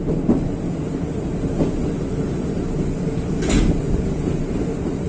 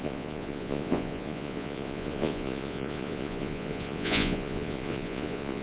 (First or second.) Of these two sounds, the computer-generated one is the second